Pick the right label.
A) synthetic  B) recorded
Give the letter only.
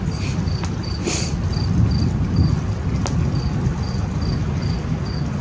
B